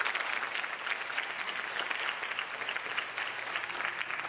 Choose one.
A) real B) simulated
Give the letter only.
A